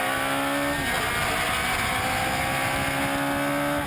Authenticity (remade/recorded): recorded